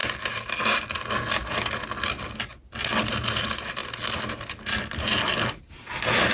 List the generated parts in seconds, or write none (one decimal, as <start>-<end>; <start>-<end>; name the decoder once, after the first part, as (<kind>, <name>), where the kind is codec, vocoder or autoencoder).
none